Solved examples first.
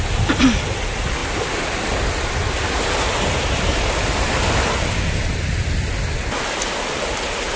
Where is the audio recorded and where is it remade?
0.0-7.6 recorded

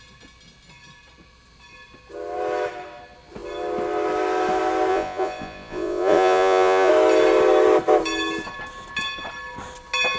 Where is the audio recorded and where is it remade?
0.0-4.9 recorded; 4.9-6.9 remade; 6.9-10.2 recorded

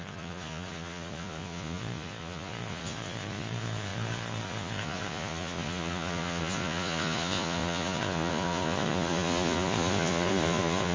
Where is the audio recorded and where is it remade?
0.0-10.9 remade

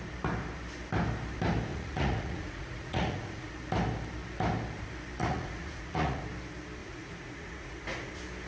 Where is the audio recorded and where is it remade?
0.0-1.7 recorded; 1.7-3.5 remade; 3.5-5.2 recorded; 5.2-6.2 remade; 6.2-6.8 recorded; 6.8-8.1 remade; 8.1-8.5 recorded